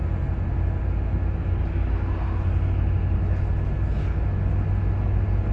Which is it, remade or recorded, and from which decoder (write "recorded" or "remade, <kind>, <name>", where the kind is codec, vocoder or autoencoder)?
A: recorded